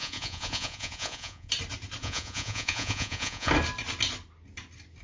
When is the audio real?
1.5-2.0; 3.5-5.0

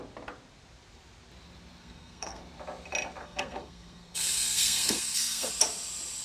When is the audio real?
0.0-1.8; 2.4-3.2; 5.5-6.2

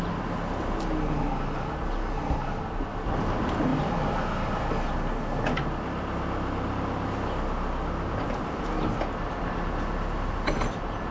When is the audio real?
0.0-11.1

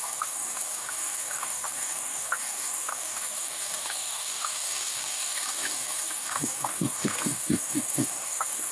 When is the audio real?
none